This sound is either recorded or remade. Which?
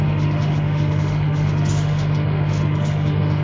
remade